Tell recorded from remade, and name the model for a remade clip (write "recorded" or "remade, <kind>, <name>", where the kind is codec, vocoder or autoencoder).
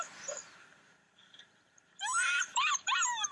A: remade, vocoder, BigVGAN v2